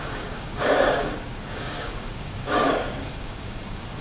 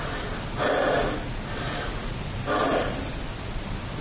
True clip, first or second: second